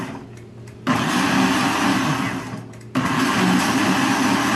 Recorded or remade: recorded